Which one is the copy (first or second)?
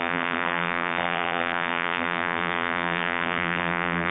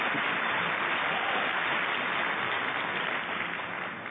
first